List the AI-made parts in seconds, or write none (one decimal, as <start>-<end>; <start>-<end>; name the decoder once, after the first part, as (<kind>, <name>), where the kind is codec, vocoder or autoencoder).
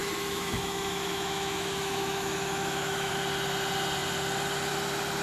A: 0.0-3.1 (autoencoder, DAC-VAE)